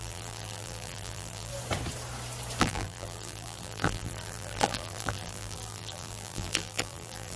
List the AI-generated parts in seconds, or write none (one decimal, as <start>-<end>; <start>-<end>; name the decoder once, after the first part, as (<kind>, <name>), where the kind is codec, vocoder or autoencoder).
0.0-1.5 (vocoder, BigVGAN v2); 2.6-7.4